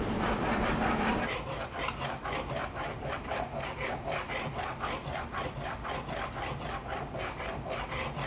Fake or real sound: fake